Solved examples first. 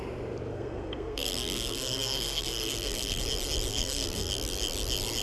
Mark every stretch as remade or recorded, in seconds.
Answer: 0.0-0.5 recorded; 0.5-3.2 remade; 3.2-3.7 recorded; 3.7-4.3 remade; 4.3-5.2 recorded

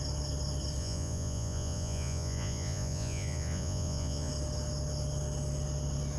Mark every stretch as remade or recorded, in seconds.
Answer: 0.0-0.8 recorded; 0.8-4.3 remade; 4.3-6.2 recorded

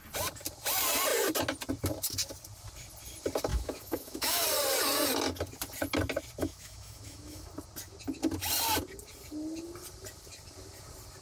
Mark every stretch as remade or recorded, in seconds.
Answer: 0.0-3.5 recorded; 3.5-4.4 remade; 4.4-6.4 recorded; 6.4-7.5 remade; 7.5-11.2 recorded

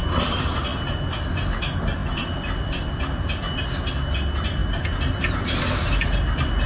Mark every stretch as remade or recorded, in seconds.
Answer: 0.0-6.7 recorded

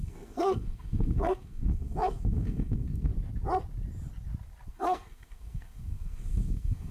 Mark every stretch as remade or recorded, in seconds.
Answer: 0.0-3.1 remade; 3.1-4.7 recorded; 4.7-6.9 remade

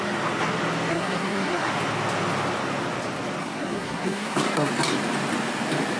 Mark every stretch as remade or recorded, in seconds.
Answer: 0.0-0.9 recorded; 0.9-1.7 remade; 1.7-3.4 recorded; 3.4-4.7 remade; 4.7-6.0 recorded